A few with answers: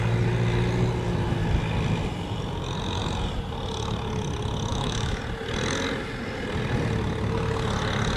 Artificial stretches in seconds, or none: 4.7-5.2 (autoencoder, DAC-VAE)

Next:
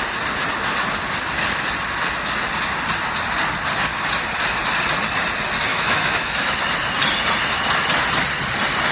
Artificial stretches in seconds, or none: 5.7-6.5 (autoencoder, DAC-VAE)

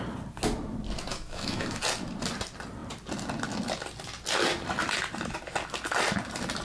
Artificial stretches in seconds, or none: 1.1-1.8 (autoencoder, DAC-VAE)

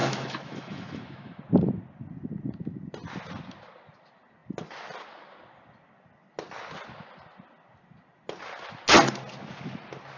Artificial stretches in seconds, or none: 0.0-1.4 (autoencoder, DAC-VAE)

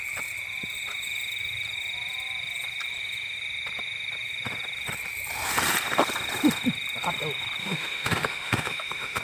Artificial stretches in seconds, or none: 7.6-9.2 (autoencoder, DAC-VAE)

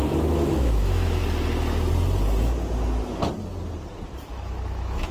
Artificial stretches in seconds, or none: 0.0-1.2 (autoencoder, DAC-VAE); 4.3-5.1